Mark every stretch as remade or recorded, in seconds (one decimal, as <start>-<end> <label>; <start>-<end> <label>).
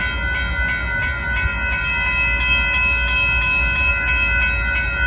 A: 0.0-5.1 recorded